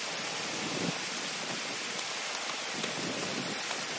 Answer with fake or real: real